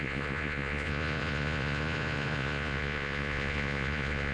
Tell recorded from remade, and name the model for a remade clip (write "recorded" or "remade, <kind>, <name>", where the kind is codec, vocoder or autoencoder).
remade, vocoder, Vocos